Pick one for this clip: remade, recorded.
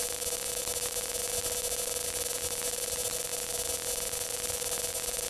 recorded